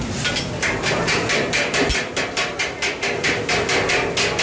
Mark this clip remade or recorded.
recorded